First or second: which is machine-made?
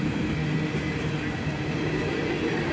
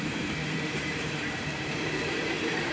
second